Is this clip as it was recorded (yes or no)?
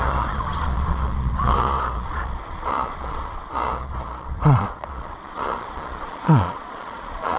no